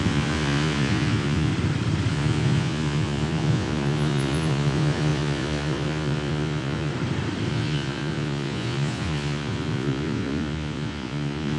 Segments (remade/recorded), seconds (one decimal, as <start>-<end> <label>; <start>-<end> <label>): 0.0-1.5 remade; 1.5-2.1 recorded; 2.1-6.9 remade; 6.9-7.5 recorded; 7.5-11.6 remade